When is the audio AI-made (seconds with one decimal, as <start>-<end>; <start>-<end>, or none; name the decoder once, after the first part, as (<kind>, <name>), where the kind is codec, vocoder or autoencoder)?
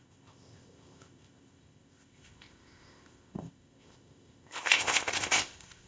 0.0-5.9 (codec, ZipCodec)